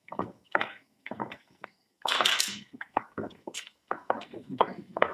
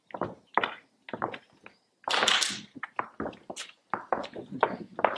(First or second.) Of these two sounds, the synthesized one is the first